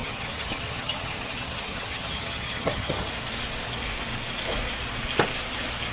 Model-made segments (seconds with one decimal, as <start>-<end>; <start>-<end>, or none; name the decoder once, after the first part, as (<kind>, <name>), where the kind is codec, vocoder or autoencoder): 0.0-3.1 (vocoder, HiFi-GAN)